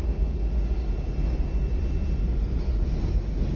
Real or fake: real